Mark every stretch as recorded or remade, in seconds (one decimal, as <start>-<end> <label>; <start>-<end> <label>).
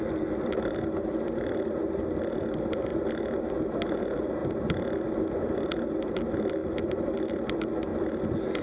0.0-8.6 recorded